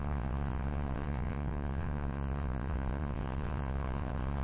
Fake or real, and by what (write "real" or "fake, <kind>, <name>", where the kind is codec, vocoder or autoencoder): fake, vocoder, WaveNeXt